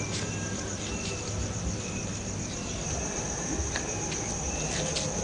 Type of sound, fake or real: real